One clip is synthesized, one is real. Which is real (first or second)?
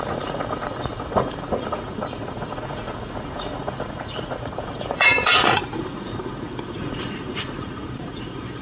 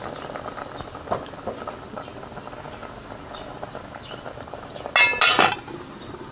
second